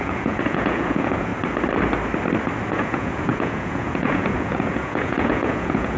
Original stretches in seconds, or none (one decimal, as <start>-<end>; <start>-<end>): 1.3-2.7